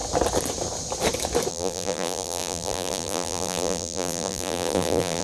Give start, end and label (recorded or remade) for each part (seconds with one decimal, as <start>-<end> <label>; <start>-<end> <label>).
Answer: 0.0-1.5 recorded; 1.5-5.2 remade